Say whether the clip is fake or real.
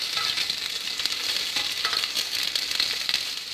fake